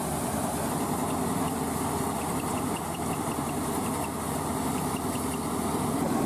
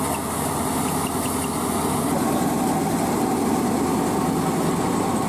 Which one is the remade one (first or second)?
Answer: first